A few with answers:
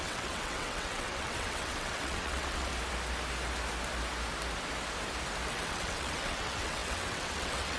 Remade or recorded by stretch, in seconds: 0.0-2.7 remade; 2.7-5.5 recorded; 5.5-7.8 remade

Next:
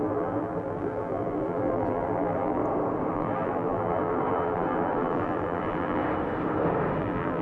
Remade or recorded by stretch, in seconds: 0.0-2.6 remade; 2.6-3.1 recorded; 3.1-6.0 remade; 6.0-7.0 recorded; 7.0-7.4 remade